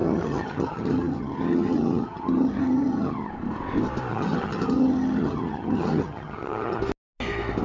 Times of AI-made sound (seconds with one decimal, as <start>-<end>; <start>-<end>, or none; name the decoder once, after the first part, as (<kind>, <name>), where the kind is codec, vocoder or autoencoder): 0.0-3.3 (vocoder, HiFi-GAN); 4.1-6.8